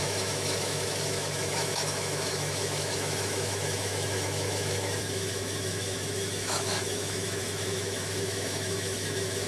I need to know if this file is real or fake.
fake